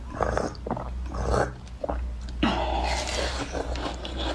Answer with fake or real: real